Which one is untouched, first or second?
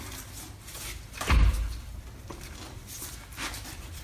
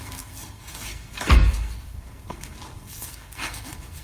first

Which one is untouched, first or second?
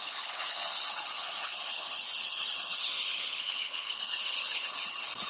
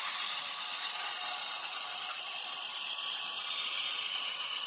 second